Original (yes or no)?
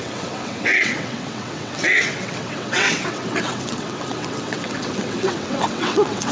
no